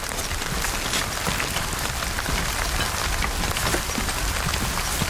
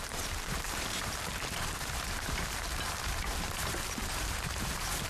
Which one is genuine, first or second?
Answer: first